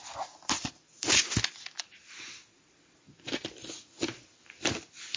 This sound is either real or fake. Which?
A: real